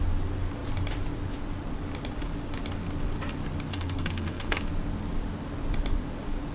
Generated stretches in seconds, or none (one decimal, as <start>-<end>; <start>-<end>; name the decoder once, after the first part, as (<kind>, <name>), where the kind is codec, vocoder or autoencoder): 3.7-4.6 (codec, SNAC)